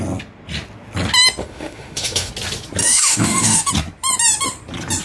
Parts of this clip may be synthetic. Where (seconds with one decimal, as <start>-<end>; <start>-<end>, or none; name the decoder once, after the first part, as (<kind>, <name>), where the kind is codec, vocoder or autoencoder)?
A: 1.4-2.3 (autoencoder, DAC-VAE); 2.8-3.7